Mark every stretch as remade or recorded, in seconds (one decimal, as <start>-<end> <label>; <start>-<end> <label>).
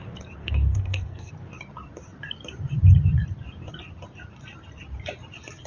0.0-0.4 recorded; 0.4-1.3 remade; 1.3-5.7 recorded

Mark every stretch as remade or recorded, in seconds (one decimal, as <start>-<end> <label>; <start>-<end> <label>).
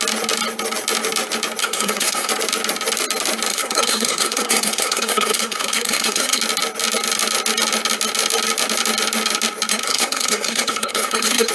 0.0-1.6 recorded; 1.6-2.3 remade; 2.3-3.5 recorded; 3.5-6.4 remade; 6.4-9.7 recorded; 9.7-11.5 remade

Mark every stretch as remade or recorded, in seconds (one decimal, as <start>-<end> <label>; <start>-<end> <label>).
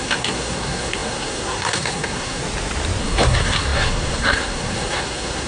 0.0-2.4 remade; 2.4-3.0 recorded; 3.0-5.5 remade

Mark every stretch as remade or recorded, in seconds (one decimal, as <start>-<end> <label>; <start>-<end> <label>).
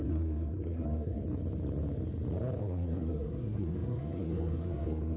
0.0-1.2 remade; 1.2-2.6 recorded; 2.6-5.2 remade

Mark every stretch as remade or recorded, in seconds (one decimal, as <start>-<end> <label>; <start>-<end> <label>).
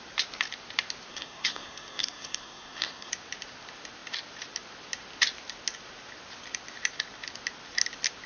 0.0-1.1 recorded; 1.1-3.1 remade; 3.1-8.3 recorded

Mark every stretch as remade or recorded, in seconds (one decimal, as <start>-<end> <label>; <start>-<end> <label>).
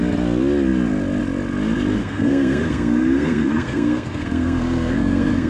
0.0-2.0 recorded; 2.0-5.5 remade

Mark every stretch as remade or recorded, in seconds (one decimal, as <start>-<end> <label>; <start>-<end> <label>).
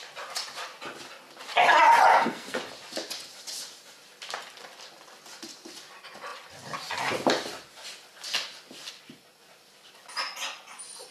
0.0-2.1 recorded; 2.1-2.6 remade; 2.6-11.1 recorded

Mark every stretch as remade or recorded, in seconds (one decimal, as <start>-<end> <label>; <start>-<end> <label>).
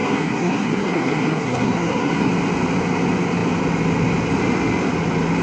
0.0-2.3 remade; 2.3-5.4 recorded